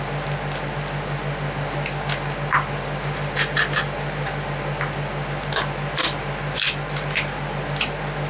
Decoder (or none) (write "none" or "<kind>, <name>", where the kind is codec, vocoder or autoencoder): none